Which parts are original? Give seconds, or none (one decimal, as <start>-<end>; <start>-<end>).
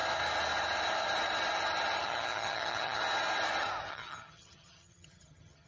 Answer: 0.0-2.0; 3.0-3.9